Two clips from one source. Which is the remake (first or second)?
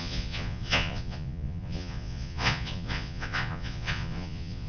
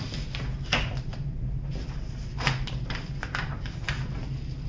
first